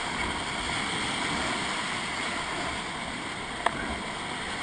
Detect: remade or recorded recorded